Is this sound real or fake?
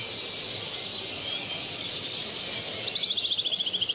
real